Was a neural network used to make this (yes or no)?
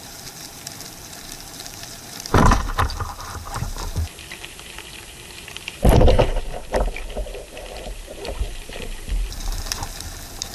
yes